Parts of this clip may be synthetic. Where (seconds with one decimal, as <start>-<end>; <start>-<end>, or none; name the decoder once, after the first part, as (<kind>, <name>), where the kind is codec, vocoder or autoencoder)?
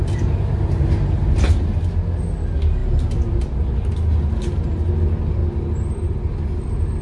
none